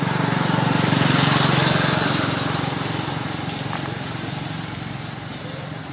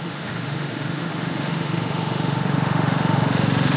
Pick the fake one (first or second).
second